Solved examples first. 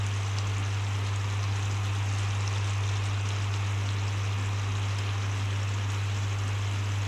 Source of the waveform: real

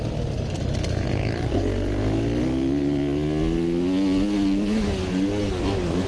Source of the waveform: real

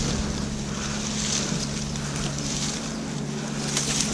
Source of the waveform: real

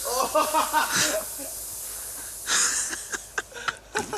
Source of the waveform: real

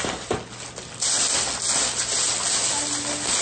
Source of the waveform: real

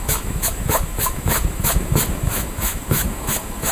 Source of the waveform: fake